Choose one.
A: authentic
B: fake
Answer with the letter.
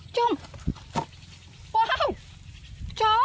A